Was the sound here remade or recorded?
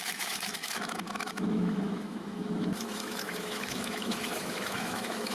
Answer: remade